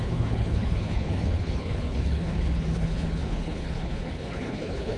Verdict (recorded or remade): remade